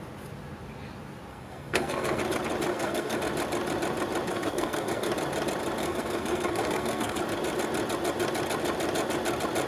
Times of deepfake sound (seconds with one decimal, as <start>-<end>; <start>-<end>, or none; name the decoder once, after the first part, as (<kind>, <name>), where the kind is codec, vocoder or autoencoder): 1.3-2.2 (codec, SNAC); 2.7-3.2; 4.3-5.1; 5.8-7.2

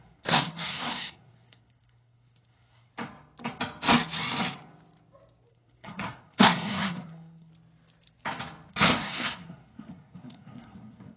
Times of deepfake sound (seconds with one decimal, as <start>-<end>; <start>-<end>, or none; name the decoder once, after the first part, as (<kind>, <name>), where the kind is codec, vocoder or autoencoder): 0.0-2.9 (codec, SNAC); 5.5-7.5; 8.7-11.2

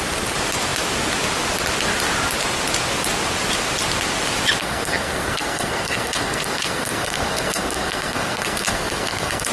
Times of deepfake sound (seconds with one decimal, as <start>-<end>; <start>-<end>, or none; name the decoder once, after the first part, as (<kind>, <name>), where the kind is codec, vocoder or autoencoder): 4.6-9.5 (codec, SNAC)